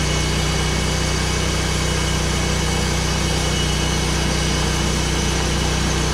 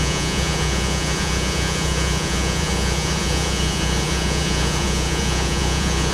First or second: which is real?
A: first